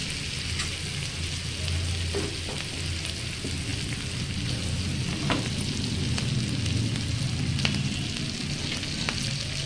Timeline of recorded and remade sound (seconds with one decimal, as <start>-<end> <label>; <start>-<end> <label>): 0.0-9.7 recorded